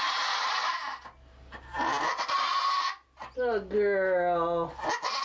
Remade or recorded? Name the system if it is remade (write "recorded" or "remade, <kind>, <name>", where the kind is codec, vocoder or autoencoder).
recorded